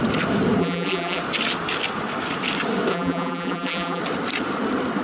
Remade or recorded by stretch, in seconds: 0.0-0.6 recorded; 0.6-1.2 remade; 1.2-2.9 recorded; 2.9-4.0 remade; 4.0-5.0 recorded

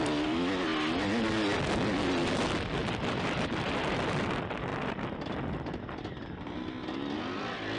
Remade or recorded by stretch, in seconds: 0.0-2.8 recorded; 2.8-4.3 remade; 4.3-4.7 recorded; 4.7-6.2 remade; 6.2-7.8 recorded

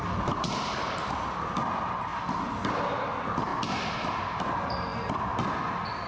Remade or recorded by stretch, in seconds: 0.0-6.1 recorded

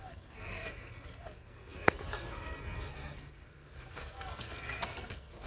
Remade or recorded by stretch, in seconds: 0.0-5.5 remade

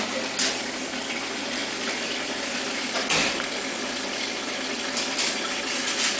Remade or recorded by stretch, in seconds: 0.0-6.2 recorded

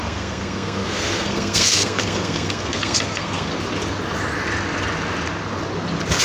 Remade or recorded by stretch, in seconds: 0.0-3.5 remade; 3.5-6.2 recorded

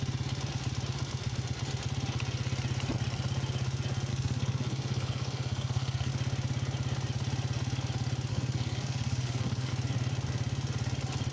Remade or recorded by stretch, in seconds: 0.0-4.1 recorded; 4.1-6.1 remade; 6.1-8.3 recorded; 8.3-9.7 remade; 9.7-11.3 recorded